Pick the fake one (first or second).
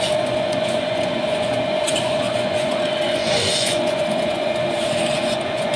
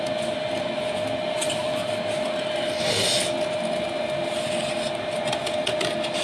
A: first